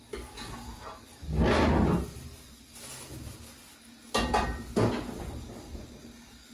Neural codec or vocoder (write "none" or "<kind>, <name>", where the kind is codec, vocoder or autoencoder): none